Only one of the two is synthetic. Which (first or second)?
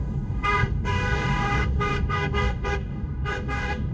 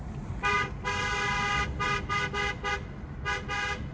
first